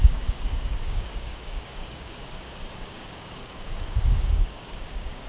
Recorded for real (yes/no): no